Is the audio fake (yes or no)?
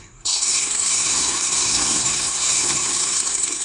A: yes